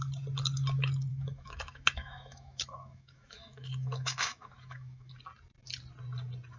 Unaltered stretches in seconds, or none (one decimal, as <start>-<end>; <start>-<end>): 0.0-1.1; 5.1-6.6

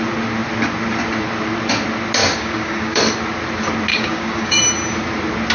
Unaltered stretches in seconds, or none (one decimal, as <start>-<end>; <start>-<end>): 0.0-2.2; 3.0-3.9; 4.6-5.5

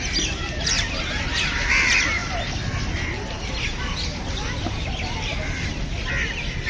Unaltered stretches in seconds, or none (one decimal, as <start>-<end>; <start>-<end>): 0.0-6.7